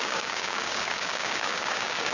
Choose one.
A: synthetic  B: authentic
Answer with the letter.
A